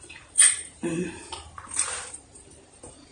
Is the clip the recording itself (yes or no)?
no